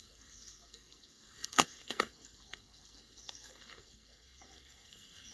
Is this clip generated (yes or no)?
yes